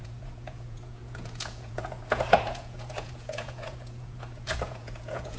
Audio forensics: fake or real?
fake